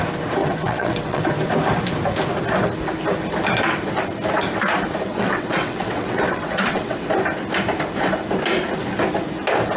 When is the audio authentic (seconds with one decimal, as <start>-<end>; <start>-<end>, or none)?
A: 0.0-0.4; 1.2-5.1; 7.1-9.8

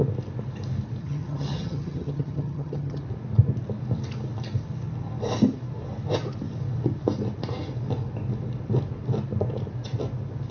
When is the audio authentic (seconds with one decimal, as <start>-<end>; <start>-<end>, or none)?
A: 0.0-1.0; 3.0-10.5

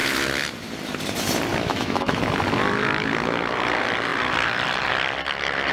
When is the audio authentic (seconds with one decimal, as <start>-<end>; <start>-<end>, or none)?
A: 0.0-1.5; 2.2-5.7

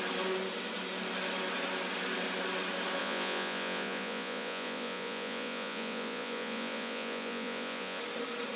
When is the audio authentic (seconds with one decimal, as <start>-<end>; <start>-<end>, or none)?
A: 0.0-3.0; 8.0-8.6